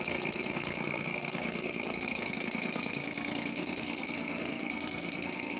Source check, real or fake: fake